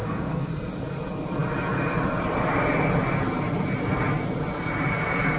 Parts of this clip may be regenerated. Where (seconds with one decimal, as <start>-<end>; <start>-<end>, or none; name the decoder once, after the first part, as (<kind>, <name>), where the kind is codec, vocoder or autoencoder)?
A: 0.0-0.5 (codec, DAC)